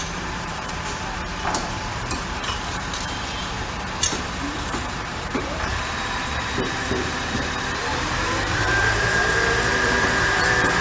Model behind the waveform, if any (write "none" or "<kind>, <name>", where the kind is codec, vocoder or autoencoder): vocoder, BigVGAN v2